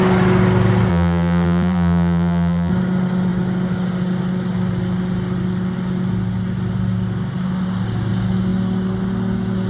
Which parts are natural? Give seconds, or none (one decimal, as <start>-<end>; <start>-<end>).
0.0-0.9; 2.7-9.7